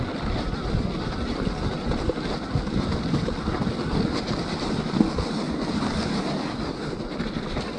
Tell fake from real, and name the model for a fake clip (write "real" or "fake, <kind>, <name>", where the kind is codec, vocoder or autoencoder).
real